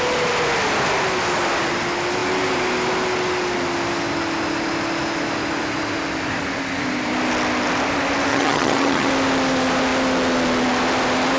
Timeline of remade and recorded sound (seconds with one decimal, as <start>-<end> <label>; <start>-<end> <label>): 0.0-8.3 recorded; 8.3-9.1 remade; 9.1-11.4 recorded